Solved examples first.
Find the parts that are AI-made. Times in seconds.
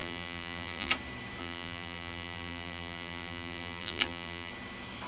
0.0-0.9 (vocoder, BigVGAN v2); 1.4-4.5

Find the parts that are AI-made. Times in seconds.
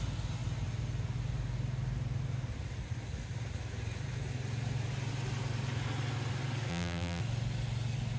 6.7-7.2 (vocoder, BigVGAN v2)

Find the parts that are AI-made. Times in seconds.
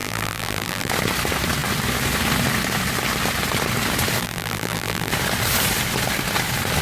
0.0-0.9 (vocoder, BigVGAN v2); 4.2-5.1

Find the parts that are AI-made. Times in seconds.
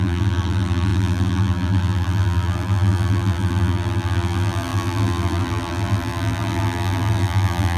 0.0-7.8 (vocoder, BigVGAN v2)